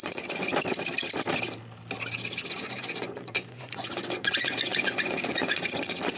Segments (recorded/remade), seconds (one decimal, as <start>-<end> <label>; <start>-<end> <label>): 0.0-0.5 remade; 0.5-2.5 recorded; 2.5-6.2 remade